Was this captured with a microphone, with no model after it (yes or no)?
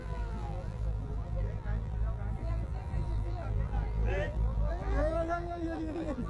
no